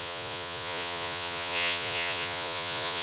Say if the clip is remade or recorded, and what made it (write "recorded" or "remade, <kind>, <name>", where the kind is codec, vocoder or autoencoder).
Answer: remade, vocoder, Vocos